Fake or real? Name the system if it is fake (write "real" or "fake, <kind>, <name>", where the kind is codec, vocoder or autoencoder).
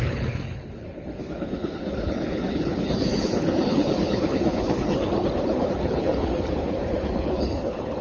fake, codec, HILCodec